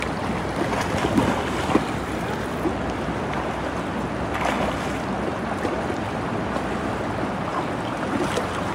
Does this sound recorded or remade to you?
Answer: recorded